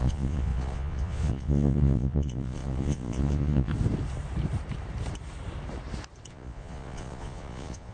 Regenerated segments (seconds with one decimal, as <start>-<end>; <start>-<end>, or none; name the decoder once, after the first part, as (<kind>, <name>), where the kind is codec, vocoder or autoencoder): 0.0-3.7 (vocoder, Vocos); 6.3-7.9